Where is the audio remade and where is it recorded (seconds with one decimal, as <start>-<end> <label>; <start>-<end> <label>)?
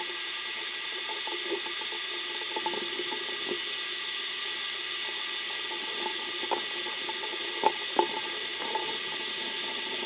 0.0-8.2 recorded; 8.2-8.8 remade; 8.8-10.1 recorded